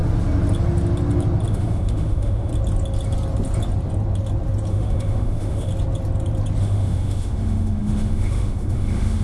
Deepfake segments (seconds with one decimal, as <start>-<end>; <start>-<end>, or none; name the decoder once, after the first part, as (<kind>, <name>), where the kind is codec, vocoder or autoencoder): 1.5-2.5 (autoencoder, DAC-VAE); 4.7-5.7; 6.6-9.2